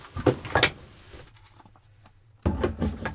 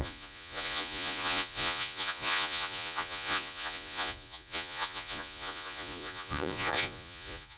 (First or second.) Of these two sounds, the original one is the first